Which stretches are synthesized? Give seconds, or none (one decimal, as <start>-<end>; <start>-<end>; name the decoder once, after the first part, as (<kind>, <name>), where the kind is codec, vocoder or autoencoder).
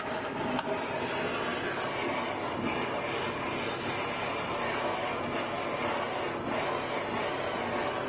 none